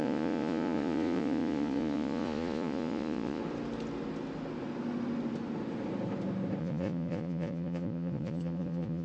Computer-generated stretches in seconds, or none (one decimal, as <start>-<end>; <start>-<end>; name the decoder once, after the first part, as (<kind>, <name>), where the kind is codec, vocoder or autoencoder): 0.0-3.4 (vocoder, Vocos); 6.6-9.0